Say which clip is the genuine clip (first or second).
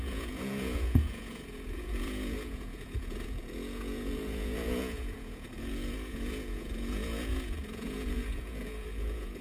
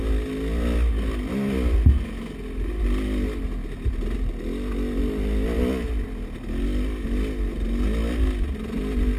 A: second